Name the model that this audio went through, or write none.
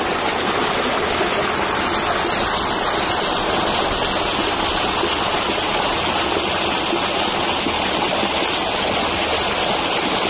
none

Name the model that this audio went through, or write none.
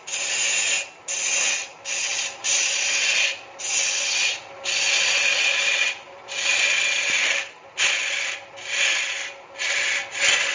none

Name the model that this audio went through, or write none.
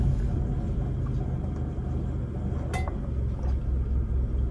none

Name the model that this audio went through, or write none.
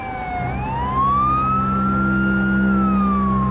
none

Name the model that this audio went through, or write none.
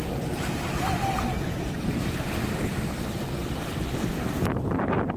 vocoder, BigVGAN v2